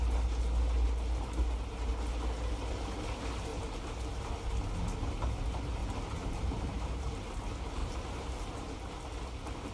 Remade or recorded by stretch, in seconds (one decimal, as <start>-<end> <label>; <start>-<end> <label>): 0.0-3.5 recorded; 3.5-4.2 remade; 4.2-5.8 recorded; 5.8-7.1 remade; 7.1-7.8 recorded; 7.8-8.9 remade; 8.9-9.7 recorded